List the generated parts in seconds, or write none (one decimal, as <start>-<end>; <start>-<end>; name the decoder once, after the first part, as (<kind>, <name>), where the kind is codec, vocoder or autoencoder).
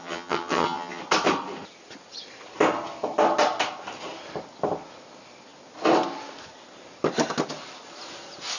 0.0-1.0 (vocoder, HiFi-GAN)